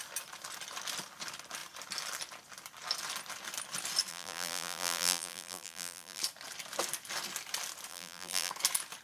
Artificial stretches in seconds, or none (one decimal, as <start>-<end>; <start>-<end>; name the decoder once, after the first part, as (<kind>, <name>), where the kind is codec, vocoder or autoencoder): 4.1-6.2 (vocoder, BigVGAN v2); 7.9-8.5